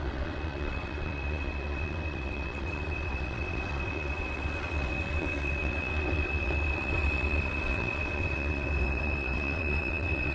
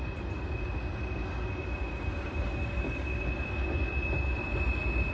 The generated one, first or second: first